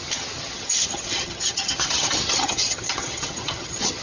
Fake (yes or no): yes